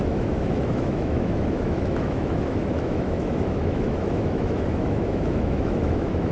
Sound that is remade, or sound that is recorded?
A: remade